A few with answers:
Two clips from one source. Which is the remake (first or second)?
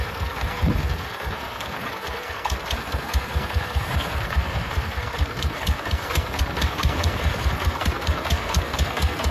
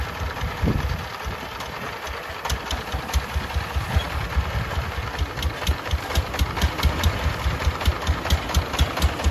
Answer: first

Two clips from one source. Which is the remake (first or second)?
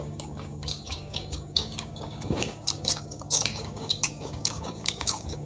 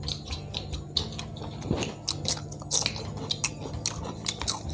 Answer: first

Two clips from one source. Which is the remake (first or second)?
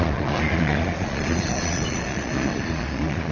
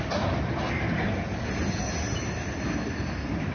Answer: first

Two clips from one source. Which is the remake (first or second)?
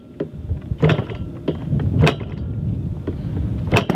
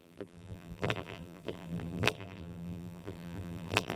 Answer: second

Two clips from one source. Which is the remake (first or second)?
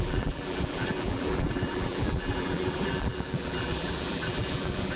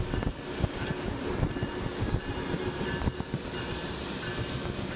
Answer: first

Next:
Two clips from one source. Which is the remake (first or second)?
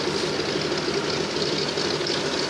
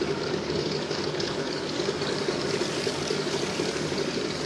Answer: second